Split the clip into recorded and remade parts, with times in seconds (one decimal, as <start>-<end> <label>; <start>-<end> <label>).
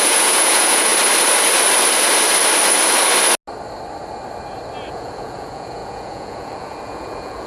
0.0-0.9 remade; 0.9-4.9 recorded; 4.9-7.5 remade